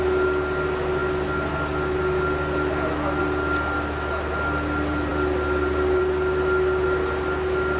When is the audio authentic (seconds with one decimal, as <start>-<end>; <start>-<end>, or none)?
0.0-7.8